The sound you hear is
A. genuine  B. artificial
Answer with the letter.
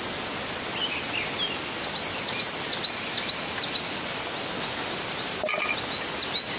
A